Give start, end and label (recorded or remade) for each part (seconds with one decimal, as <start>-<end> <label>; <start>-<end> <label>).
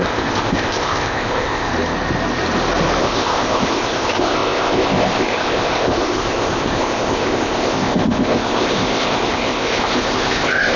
0.0-1.7 remade; 1.7-3.0 recorded; 3.0-10.8 remade